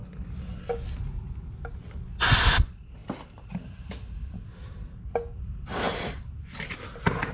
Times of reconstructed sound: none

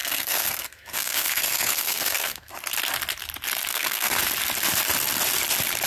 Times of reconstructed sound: 0.0-2.5; 3.7-4.2

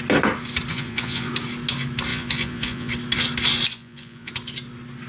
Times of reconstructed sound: 0.7-1.3; 2.1-2.9; 3.7-4.3

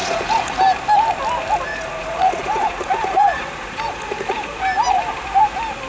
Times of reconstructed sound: 0.0-0.6; 1.7-4.6

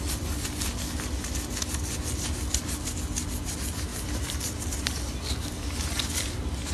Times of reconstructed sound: 3.9-5.1